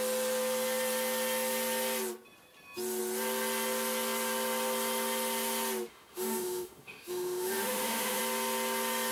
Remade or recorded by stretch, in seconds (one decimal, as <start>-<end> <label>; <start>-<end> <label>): 0.0-5.9 recorded; 5.9-8.2 remade; 8.2-9.1 recorded

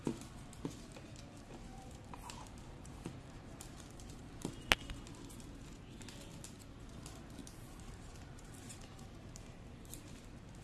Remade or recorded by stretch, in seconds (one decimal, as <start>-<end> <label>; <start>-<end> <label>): 0.0-1.7 recorded; 1.7-4.5 remade; 4.5-7.4 recorded; 7.4-10.0 remade; 10.0-10.6 recorded

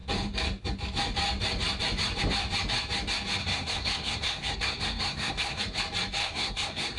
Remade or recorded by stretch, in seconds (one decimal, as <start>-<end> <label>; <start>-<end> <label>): 0.0-3.4 recorded; 3.4-5.6 remade; 5.6-6.2 recorded; 6.2-7.0 remade

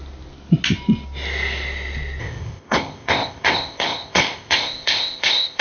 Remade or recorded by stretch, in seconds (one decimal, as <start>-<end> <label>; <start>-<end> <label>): 0.0-2.2 recorded; 2.2-5.6 remade

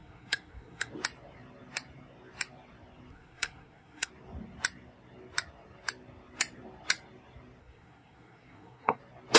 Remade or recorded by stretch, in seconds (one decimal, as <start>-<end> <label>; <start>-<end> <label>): 0.0-0.9 remade; 0.9-3.1 recorded; 3.1-4.1 remade; 4.1-7.6 recorded; 7.6-9.0 remade; 9.0-9.4 recorded